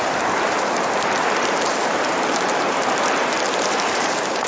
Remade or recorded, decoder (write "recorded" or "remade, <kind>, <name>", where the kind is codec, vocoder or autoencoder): remade, vocoder, BigVGAN v2